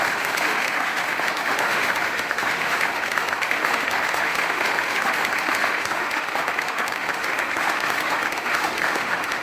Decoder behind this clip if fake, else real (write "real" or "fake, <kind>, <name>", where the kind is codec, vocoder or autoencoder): fake, autoencoder, DAC-VAE